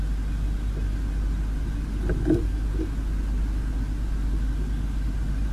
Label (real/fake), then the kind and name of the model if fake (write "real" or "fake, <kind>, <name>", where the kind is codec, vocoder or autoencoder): real